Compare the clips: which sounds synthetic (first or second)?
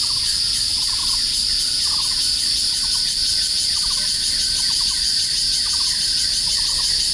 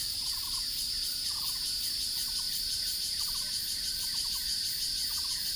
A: second